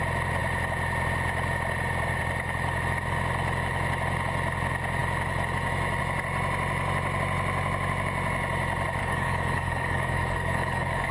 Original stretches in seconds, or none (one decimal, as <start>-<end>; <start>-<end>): 0.0-9.0